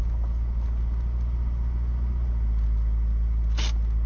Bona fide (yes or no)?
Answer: yes